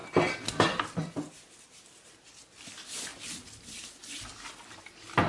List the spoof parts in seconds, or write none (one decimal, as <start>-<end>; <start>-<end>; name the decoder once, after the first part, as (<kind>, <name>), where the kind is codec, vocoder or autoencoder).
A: none